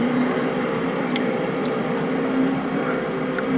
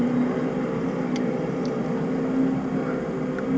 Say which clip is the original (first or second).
second